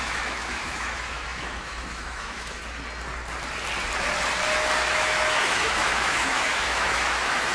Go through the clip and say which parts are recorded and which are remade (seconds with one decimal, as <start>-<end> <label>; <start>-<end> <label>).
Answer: 0.0-2.6 remade; 2.6-4.9 recorded; 4.9-7.5 remade